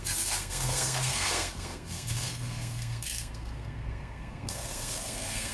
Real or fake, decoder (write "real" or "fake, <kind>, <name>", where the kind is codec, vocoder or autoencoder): fake, codec, SNAC